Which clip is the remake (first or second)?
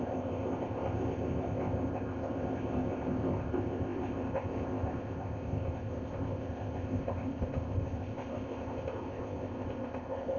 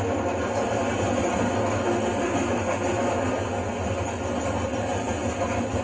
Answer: first